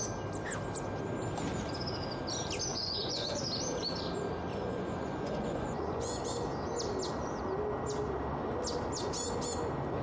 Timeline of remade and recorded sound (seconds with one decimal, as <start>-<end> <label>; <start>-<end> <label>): 0.0-2.7 recorded; 2.7-3.4 remade; 3.4-4.5 recorded; 4.5-6.2 remade; 6.2-10.0 recorded